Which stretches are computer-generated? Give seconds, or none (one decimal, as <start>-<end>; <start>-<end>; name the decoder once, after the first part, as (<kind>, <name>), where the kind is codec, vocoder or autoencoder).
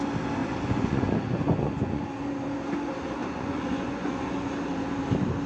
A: 0.4-2.0 (vocoder, Vocos); 3.2-4.5